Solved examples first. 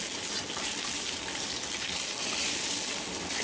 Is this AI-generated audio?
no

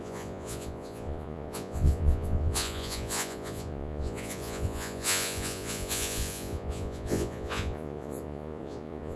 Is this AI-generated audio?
yes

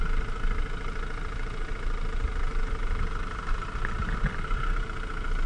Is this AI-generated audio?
no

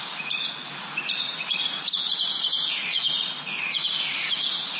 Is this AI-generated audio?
yes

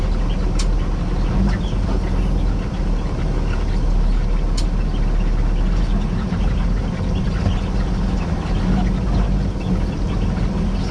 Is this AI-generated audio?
no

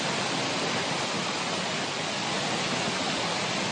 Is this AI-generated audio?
no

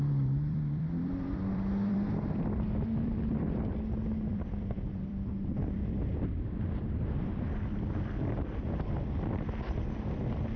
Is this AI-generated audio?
yes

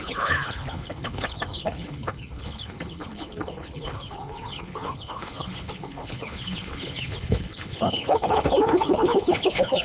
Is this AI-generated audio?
yes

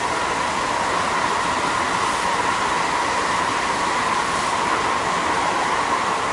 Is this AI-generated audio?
no